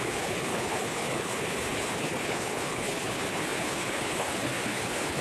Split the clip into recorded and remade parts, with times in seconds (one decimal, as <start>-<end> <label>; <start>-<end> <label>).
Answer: 0.0-5.2 remade